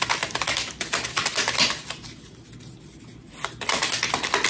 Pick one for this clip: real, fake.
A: real